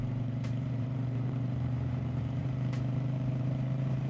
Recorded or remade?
remade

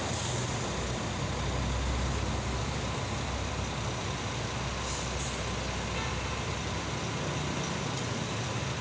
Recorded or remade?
recorded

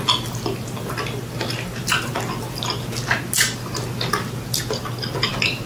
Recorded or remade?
recorded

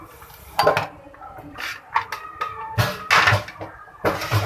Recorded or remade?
recorded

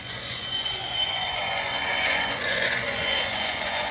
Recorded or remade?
remade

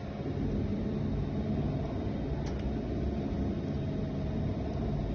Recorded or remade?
recorded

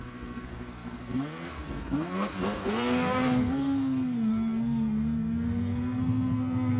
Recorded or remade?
remade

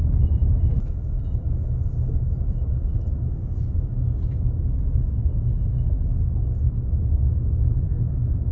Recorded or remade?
recorded